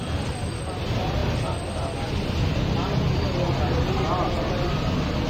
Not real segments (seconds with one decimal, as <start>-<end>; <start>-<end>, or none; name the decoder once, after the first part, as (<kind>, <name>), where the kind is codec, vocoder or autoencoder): none